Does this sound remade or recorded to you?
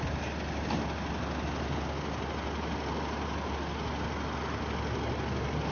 recorded